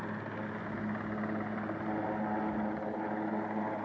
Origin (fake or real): real